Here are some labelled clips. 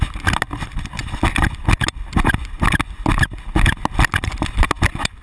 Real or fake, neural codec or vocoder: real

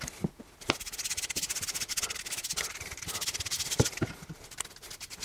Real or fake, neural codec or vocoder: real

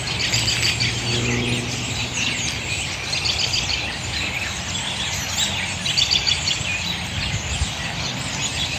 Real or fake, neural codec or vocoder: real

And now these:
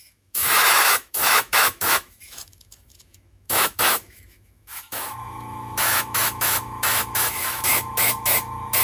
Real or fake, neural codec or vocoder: fake, autoencoder, DAC-VAE